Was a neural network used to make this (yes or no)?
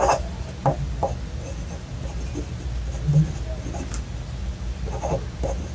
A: no